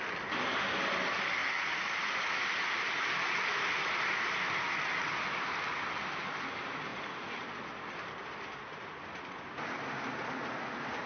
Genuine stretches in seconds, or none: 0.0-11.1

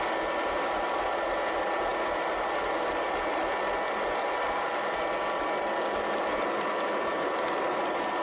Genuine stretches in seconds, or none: 0.0-8.2

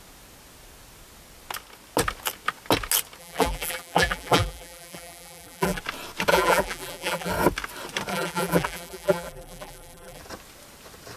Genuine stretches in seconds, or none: 0.0-3.2; 5.8-6.3; 7.3-8.1; 10.2-11.2

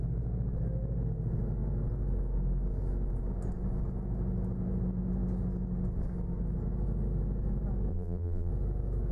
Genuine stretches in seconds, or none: 0.0-7.9; 8.5-9.1

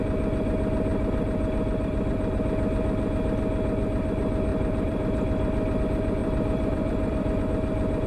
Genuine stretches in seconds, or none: 0.0-0.9; 2.4-4.5; 5.8-6.2; 7.4-8.1